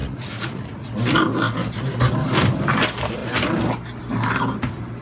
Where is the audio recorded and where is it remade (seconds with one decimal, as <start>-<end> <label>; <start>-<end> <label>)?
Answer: 0.0-0.9 remade; 0.9-5.0 recorded